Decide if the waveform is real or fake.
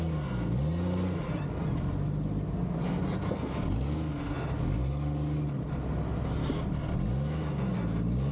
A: real